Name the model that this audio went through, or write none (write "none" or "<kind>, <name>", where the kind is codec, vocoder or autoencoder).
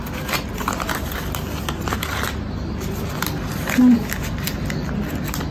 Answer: none